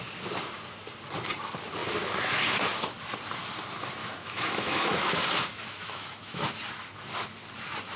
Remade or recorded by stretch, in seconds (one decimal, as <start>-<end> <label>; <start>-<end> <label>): 0.0-4.0 recorded; 4.0-5.1 remade; 5.1-5.5 recorded; 5.5-6.4 remade; 6.4-8.0 recorded